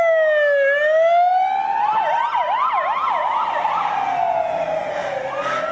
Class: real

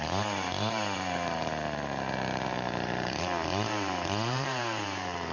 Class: fake